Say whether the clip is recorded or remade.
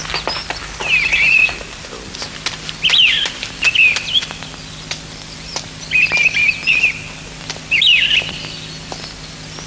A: recorded